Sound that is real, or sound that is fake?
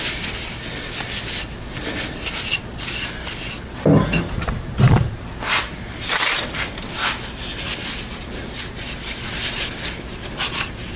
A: real